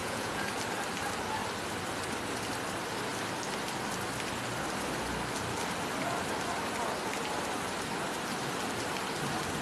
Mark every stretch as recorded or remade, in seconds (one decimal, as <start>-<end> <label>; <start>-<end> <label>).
0.0-0.5 remade; 0.5-9.6 recorded